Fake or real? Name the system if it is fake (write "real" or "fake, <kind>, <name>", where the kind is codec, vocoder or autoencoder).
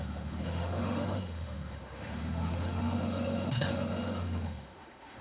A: fake, autoencoder, DAC-VAE